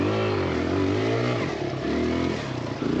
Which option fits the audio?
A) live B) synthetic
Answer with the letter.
A